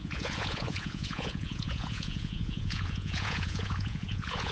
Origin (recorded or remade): remade